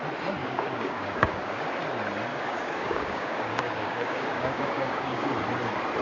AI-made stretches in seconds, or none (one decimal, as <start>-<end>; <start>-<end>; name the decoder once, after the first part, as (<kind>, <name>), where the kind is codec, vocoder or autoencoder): 0.4-1.7 (codec, DAC); 2.3-5.3